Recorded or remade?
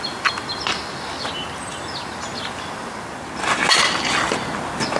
recorded